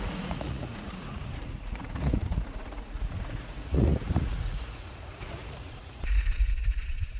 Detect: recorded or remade remade